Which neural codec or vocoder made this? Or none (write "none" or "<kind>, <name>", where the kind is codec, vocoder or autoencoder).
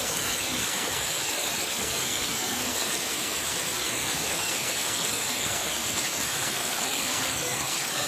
codec, SNAC